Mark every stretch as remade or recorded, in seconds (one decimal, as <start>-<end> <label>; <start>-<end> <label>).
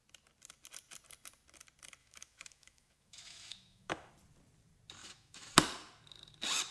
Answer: 0.0-2.0 recorded; 2.0-4.1 remade; 4.1-5.0 recorded; 5.0-5.5 remade; 5.5-6.7 recorded